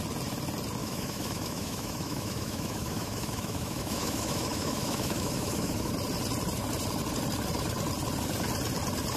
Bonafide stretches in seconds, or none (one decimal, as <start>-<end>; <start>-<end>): 0.0-0.8; 5.9-9.2